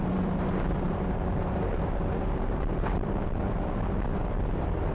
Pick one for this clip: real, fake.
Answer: fake